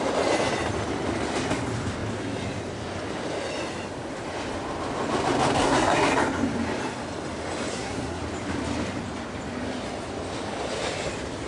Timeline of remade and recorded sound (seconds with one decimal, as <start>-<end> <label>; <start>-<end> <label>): 0.0-5.6 recorded; 5.6-6.1 remade; 6.1-7.7 recorded; 7.7-8.2 remade; 8.2-11.5 recorded